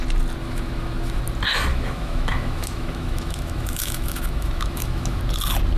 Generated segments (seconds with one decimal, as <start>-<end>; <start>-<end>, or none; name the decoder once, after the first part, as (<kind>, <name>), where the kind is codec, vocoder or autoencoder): 0.4-1.2 (autoencoder, DAC-VAE); 1.7-5.2